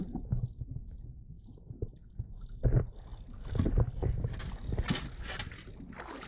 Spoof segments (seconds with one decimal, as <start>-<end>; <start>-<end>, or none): none